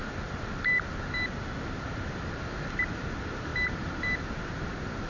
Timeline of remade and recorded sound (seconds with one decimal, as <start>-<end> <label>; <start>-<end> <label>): 0.0-5.1 recorded